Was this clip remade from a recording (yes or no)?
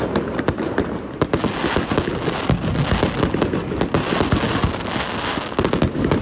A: no